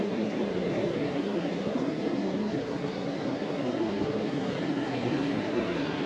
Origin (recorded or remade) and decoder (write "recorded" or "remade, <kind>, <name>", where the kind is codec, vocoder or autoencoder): remade, codec, SNAC